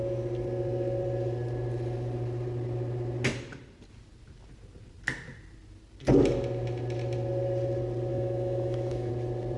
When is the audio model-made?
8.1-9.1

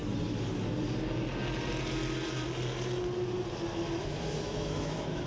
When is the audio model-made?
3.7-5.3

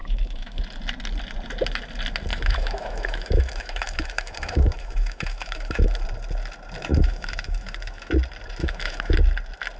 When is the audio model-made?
0.0-0.6; 2.3-6.0; 6.8-8.1; 8.6-9.1

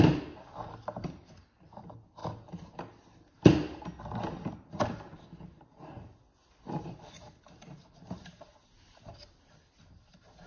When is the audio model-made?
none